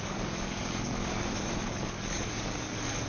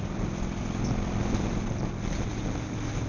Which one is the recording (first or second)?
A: second